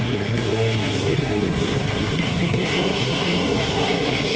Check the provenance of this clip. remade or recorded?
remade